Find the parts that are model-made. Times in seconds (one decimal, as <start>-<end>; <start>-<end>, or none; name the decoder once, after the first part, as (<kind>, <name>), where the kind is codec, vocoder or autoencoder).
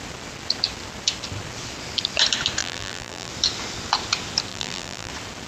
2.6-3.3 (vocoder, BigVGAN v2); 4.5-5.1